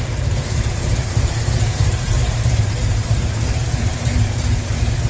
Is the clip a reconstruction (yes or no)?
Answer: yes